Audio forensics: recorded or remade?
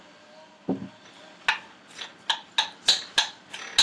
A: recorded